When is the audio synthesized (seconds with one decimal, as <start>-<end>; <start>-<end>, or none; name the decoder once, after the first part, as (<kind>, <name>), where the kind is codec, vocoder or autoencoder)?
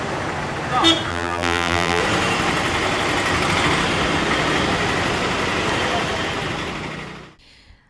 1.1-2.0 (vocoder, BigVGAN v2)